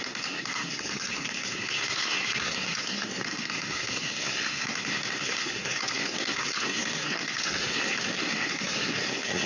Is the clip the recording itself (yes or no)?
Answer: no